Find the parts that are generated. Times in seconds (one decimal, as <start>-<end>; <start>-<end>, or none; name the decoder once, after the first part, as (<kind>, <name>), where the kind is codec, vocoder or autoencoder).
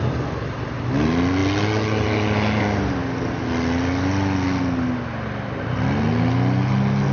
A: none